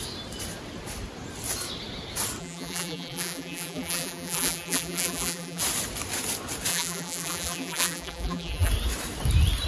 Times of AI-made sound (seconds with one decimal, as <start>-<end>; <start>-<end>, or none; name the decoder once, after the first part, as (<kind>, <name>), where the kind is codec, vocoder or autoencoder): 2.4-5.6 (vocoder, BigVGAN v2); 6.7-8.7

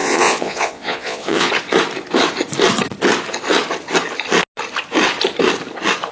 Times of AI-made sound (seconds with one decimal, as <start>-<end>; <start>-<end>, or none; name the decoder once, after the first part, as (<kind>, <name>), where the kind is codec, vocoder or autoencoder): 0.0-1.5 (vocoder, Vocos)

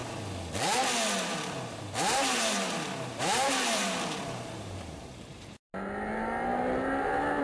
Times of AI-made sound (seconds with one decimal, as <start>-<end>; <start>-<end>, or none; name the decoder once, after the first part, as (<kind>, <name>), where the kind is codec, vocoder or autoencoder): 1.3-5.7 (vocoder, BigVGAN v2)

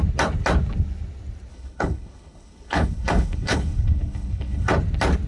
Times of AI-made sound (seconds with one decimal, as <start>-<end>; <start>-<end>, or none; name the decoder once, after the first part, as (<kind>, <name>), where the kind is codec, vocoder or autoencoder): 1.5-4.7 (codec, HILCodec)

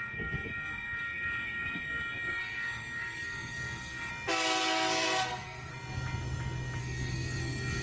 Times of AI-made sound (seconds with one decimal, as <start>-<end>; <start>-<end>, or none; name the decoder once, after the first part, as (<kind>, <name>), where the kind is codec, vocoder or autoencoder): 0.0-4.1 (codec, SNAC); 4.6-5.7; 6.8-7.8